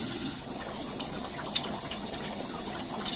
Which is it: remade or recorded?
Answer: remade